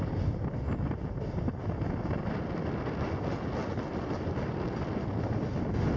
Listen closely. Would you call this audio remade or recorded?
recorded